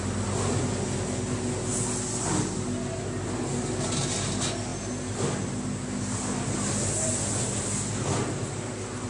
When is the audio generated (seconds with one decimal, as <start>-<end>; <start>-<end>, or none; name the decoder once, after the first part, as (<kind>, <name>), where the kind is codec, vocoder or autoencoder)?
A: none